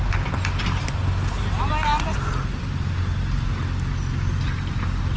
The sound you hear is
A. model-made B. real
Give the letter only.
B